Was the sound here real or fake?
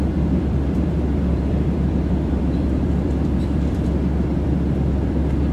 fake